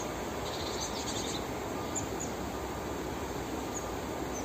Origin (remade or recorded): recorded